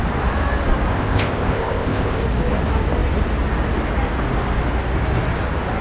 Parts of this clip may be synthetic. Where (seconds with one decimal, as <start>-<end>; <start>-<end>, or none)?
0.9-2.2